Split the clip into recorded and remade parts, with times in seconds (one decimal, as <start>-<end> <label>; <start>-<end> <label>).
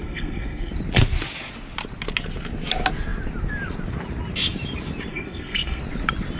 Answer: 0.0-0.7 remade; 0.7-5.1 recorded; 5.1-5.8 remade; 5.8-6.4 recorded